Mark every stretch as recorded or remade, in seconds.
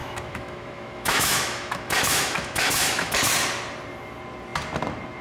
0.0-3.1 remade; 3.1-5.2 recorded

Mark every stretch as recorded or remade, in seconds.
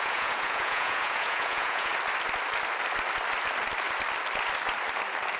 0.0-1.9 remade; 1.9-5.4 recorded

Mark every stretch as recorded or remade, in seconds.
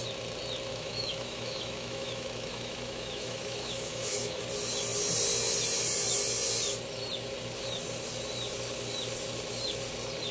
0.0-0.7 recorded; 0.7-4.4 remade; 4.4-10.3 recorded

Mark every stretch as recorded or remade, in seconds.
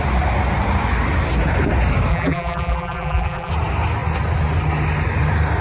0.0-2.1 recorded; 2.1-3.5 remade; 3.5-5.6 recorded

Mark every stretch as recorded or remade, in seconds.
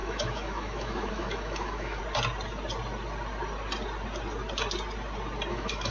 0.0-2.0 remade; 2.0-5.5 recorded; 5.5-5.9 remade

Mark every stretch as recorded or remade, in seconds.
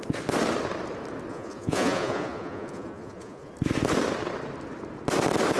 0.0-1.3 recorded; 1.3-3.5 remade; 3.5-5.6 recorded